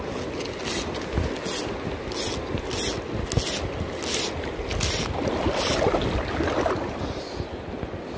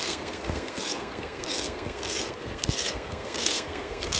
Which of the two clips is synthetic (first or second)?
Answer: second